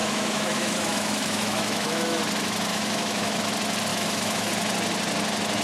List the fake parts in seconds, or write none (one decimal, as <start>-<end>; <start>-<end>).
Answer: 0.0-2.2; 2.7-3.4; 3.9-4.5